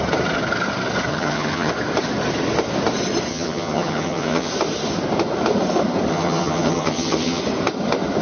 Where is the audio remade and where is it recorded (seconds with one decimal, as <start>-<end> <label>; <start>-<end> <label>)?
0.0-1.1 recorded; 1.1-1.7 remade; 1.7-3.3 recorded; 3.3-4.5 remade; 4.5-6.1 recorded; 6.1-7.4 remade; 7.4-8.2 recorded